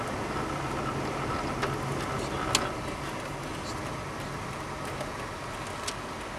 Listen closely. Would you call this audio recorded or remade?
recorded